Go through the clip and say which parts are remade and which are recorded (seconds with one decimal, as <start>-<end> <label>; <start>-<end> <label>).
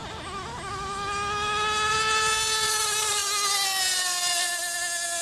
0.0-1.9 recorded; 1.9-3.2 remade; 3.2-3.8 recorded; 3.8-4.5 remade; 4.5-5.2 recorded